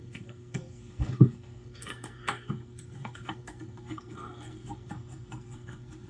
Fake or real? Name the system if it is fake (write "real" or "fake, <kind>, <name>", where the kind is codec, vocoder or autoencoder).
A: fake, codec, SNAC